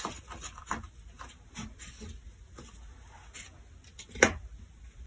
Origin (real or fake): real